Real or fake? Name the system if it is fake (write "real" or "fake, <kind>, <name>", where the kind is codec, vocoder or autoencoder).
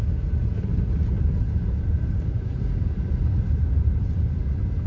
real